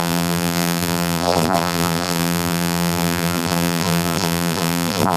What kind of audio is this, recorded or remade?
remade